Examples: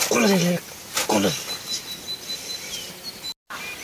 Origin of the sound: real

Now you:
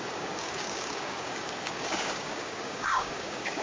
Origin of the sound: fake